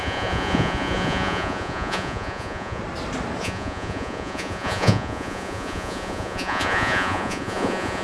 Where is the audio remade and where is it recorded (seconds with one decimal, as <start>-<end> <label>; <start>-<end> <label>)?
0.0-2.8 remade; 2.8-3.4 recorded; 3.4-8.0 remade